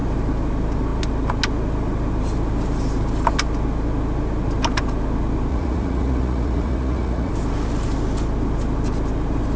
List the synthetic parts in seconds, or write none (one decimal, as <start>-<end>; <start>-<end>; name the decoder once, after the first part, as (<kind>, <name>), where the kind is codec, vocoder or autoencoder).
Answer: 5.5-7.3 (vocoder, Vocos)